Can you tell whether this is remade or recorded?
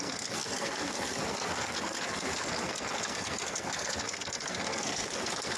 remade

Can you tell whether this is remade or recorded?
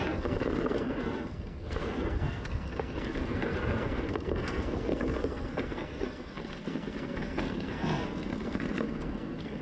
remade